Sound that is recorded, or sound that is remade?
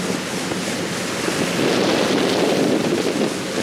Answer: recorded